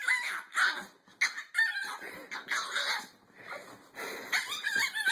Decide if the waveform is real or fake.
real